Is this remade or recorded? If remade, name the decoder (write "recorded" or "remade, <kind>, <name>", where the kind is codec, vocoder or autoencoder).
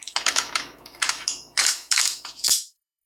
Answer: remade, autoencoder, DAC-VAE